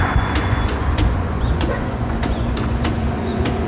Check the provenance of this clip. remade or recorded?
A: remade